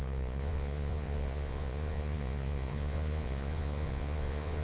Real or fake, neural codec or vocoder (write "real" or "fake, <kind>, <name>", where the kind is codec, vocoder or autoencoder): fake, vocoder, Vocos